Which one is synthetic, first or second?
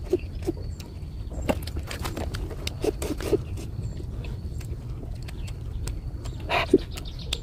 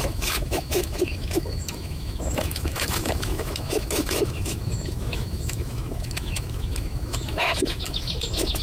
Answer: second